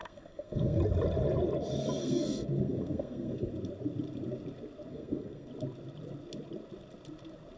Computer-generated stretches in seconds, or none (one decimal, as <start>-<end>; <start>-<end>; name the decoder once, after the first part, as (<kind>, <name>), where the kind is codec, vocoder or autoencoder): 0.0-0.8 (codec, SNAC); 2.0-3.5; 4.9-5.5